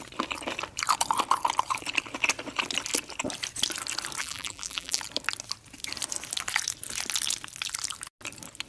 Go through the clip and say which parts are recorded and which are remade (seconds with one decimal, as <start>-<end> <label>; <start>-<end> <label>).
0.0-4.2 recorded; 4.2-5.0 remade; 5.0-8.7 recorded

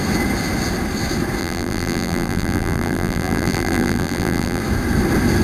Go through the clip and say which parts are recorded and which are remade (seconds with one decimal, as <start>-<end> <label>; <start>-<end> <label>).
0.0-1.4 recorded; 1.4-4.6 remade; 4.6-5.4 recorded

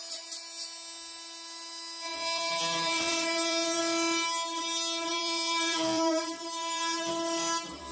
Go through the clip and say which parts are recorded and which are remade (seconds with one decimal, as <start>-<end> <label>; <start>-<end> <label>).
0.0-2.1 recorded; 2.1-3.8 remade; 3.8-5.1 recorded; 5.1-7.1 remade; 7.1-7.9 recorded

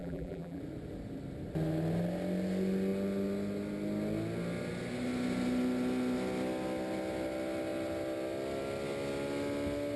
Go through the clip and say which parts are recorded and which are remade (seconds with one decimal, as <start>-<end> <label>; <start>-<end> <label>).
0.0-0.6 remade; 0.6-10.0 recorded